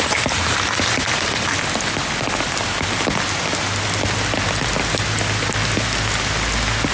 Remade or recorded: recorded